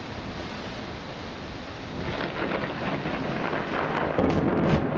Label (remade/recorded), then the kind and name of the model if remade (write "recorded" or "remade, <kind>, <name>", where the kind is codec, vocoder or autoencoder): recorded